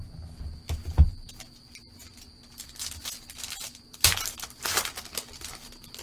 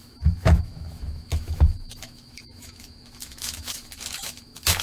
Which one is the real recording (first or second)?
first